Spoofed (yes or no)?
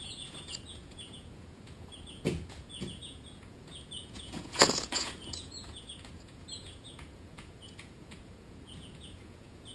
yes